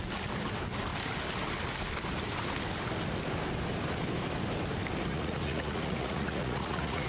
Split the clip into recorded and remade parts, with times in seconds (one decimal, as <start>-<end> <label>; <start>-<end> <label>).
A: 0.0-5.1 recorded; 5.1-7.1 remade